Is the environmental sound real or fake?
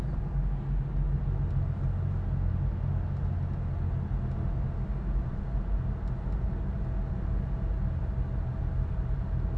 real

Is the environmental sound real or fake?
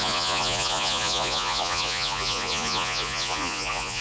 fake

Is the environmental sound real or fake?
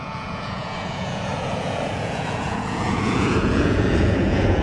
fake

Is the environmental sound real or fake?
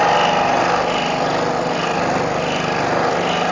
real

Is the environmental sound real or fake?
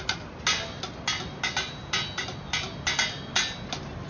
real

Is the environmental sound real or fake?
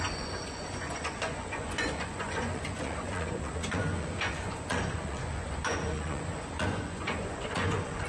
fake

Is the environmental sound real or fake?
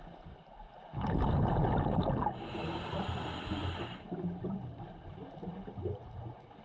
real